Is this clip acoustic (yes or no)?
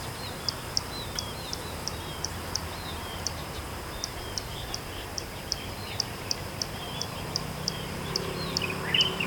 no